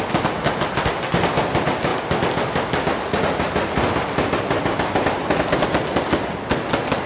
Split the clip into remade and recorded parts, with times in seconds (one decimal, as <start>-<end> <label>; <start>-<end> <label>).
0.0-7.1 recorded